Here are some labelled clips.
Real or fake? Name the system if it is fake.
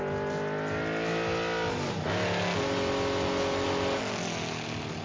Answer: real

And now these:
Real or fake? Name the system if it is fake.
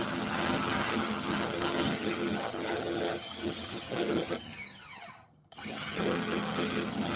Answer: fake, vocoder, HiFi-GAN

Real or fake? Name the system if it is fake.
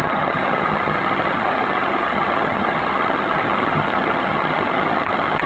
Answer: fake, vocoder, HiFi-GAN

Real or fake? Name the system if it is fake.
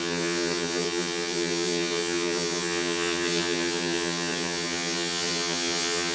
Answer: fake, vocoder, HiFi-GAN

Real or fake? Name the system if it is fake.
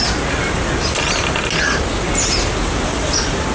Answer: real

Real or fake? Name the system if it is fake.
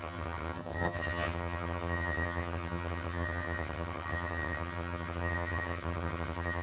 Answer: fake, vocoder, HiFi-GAN